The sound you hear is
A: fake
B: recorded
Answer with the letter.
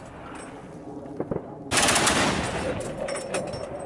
B